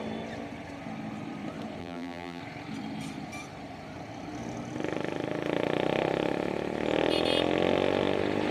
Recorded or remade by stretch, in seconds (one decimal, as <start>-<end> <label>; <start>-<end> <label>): 0.0-1.8 recorded; 1.8-2.4 remade; 2.4-8.5 recorded